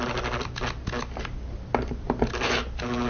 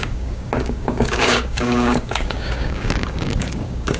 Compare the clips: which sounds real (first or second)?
first